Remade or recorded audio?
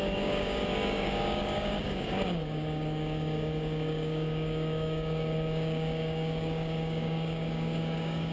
remade